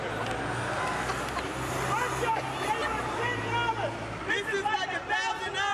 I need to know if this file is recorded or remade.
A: recorded